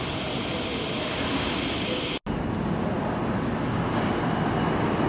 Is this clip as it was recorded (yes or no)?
yes